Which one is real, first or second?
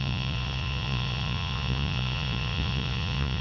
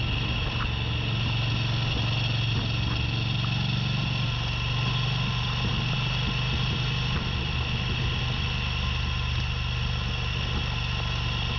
second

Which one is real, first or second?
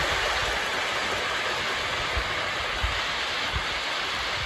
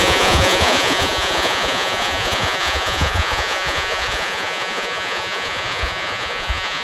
first